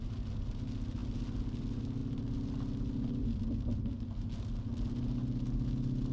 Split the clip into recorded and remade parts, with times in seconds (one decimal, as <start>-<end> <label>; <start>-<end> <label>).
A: 0.0-6.1 recorded